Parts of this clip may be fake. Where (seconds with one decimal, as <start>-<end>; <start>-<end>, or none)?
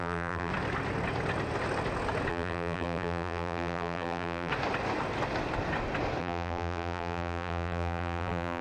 0.0-0.5; 2.3-4.5; 6.2-8.6